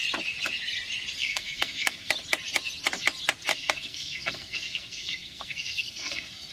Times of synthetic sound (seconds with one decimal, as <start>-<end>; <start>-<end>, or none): 1.2-2.1; 3.5-6.5